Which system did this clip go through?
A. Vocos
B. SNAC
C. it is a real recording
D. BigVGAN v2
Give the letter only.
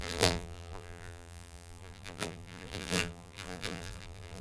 D